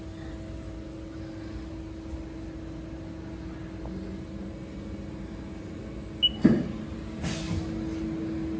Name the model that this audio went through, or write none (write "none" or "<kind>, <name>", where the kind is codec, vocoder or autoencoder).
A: none